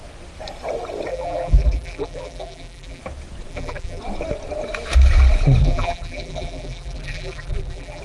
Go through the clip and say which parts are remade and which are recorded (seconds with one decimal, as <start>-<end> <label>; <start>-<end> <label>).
0.0-1.1 recorded; 1.1-3.0 remade; 3.0-3.5 recorded; 3.5-4.0 remade; 4.0-5.6 recorded; 5.6-8.0 remade